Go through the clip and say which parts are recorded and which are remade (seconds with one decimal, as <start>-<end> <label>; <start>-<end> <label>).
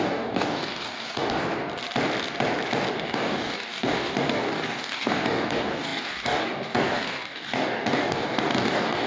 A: 0.0-1.4 remade; 1.4-2.9 recorded; 2.9-9.1 remade